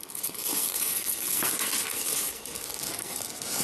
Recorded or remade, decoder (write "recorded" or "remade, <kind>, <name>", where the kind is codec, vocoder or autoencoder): remade, codec, SNAC